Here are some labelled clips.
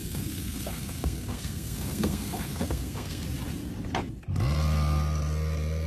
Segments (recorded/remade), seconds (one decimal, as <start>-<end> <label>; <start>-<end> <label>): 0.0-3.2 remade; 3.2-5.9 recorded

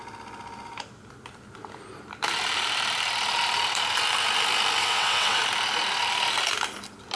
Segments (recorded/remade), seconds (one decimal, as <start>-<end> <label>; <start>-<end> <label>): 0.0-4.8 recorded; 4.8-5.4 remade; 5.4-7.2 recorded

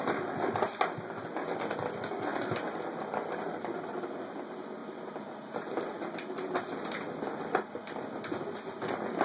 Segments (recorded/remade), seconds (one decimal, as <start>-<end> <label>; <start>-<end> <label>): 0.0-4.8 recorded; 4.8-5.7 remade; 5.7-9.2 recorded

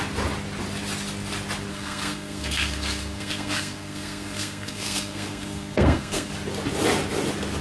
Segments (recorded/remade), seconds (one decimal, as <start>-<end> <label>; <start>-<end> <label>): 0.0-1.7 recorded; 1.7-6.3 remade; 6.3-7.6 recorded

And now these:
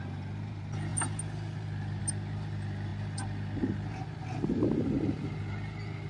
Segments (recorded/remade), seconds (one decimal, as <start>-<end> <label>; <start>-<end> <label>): 0.0-6.1 recorded

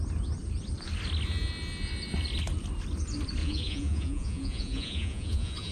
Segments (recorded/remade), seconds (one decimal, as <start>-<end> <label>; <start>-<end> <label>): 0.0-3.4 recorded; 3.4-5.7 remade